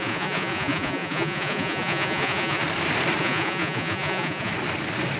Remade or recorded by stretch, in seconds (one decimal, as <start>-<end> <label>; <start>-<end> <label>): 0.0-2.6 remade; 2.6-3.2 recorded; 3.2-4.5 remade; 4.5-5.2 recorded